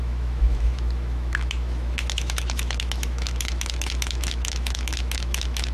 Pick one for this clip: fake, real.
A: fake